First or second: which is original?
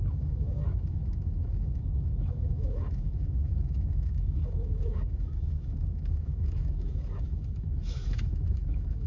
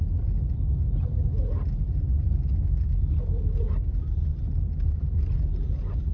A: second